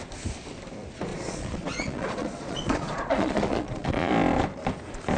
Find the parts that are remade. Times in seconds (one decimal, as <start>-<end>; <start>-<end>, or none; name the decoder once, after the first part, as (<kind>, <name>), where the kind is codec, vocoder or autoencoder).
1.1-4.1 (vocoder, Vocos)